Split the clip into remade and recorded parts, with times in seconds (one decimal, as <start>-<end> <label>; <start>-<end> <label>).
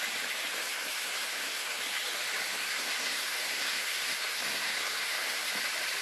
0.0-0.6 recorded; 0.6-1.8 remade; 1.8-2.5 recorded; 2.5-5.5 remade; 5.5-6.0 recorded